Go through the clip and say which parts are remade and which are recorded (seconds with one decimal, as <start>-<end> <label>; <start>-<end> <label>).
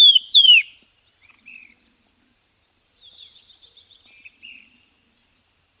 0.0-5.8 remade